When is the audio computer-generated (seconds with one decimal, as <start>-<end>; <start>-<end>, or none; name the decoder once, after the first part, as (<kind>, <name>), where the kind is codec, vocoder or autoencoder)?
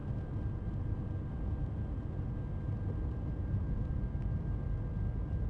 none